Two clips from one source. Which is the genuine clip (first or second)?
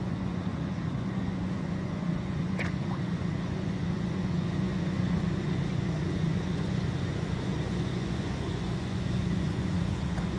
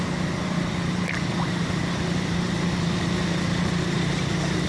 second